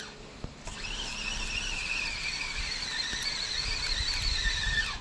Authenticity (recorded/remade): remade